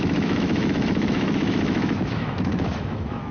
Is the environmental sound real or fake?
fake